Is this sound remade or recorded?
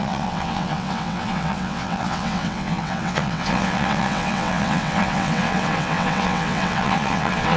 remade